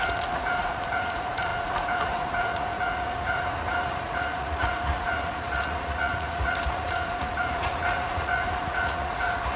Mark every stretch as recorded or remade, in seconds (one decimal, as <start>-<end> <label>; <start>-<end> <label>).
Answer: 0.0-9.6 remade